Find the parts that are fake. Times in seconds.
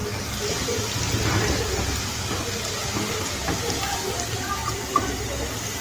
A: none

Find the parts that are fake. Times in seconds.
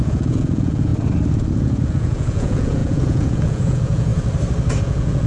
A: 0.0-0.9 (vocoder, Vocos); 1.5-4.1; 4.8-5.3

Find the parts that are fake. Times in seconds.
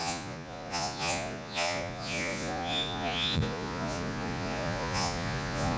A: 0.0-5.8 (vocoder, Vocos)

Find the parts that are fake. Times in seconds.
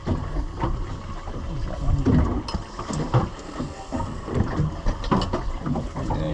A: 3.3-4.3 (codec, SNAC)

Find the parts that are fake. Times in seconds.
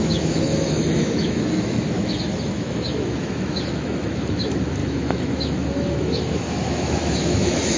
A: 0.0-7.8 (autoencoder, DAC-VAE)